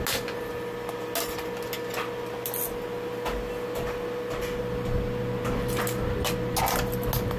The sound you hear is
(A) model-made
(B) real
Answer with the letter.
B